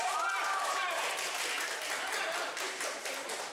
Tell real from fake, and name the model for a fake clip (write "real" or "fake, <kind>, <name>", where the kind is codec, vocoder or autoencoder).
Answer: fake, vocoder, BigVGAN v2